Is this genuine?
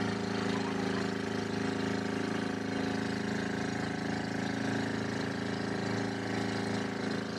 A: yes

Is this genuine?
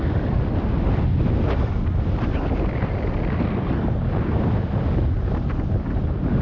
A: yes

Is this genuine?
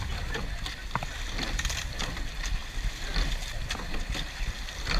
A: no